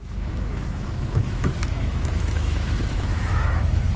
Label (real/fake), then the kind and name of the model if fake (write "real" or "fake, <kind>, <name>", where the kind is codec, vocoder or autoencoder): fake, autoencoder, DAC-VAE